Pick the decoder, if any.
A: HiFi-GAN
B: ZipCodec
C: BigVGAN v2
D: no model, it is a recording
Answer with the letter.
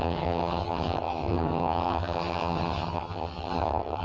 A